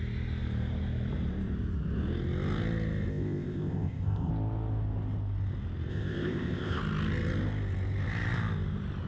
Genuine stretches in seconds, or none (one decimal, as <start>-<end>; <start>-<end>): 0.0-3.1; 4.3-5.9; 6.8-9.1